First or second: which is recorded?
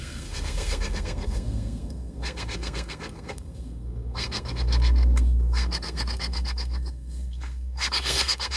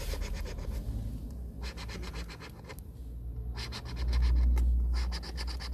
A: second